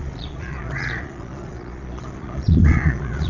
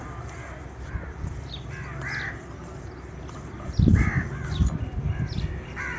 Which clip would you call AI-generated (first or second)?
first